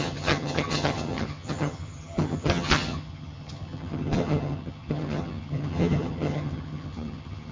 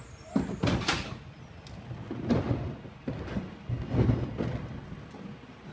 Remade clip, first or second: first